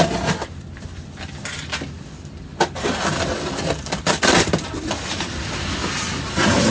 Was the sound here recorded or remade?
recorded